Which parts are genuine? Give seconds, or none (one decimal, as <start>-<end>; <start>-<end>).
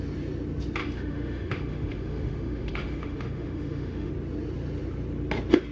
0.0-0.8; 4.1-5.7